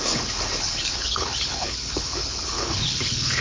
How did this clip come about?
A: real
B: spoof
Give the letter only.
B